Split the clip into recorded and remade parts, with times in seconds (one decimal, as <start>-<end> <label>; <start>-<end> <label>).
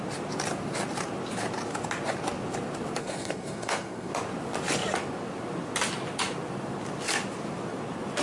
0.0-3.0 recorded; 3.0-4.1 remade; 4.1-8.2 recorded